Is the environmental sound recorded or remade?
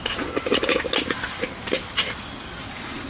recorded